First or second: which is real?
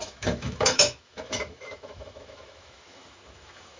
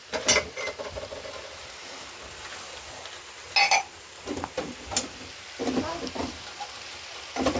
second